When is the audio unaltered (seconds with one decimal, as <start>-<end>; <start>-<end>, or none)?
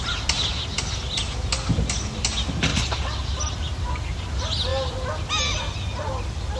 0.0-2.7; 4.2-6.6